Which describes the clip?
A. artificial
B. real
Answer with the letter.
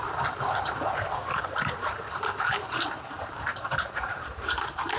A